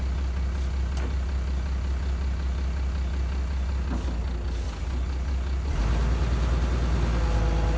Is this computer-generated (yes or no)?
no